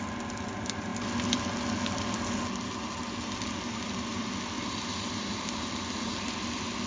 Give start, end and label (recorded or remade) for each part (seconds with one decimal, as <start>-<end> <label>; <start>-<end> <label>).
0.0-6.9 recorded